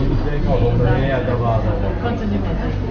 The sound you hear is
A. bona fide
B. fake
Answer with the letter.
A